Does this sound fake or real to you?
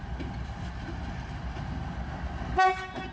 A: real